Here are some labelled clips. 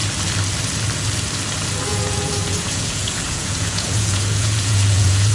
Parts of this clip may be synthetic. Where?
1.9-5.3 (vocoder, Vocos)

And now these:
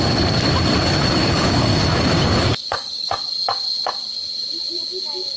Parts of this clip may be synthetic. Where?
1.2-3.2 (codec, DAC)

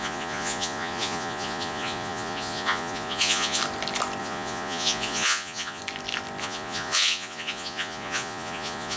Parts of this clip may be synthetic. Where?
0.0-3.6 (vocoder, Vocos); 4.2-5.8; 6.4-9.0

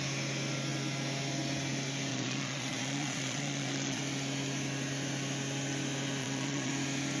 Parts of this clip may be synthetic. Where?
2.1-4.0 (vocoder, Vocos); 6.2-6.7

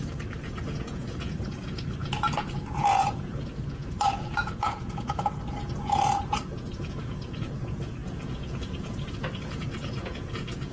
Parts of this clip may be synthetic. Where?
0.0-10.7 (vocoder, Vocos)